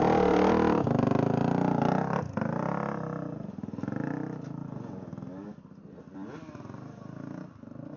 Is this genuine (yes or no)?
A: yes